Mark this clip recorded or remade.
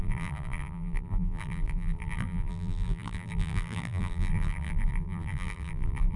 remade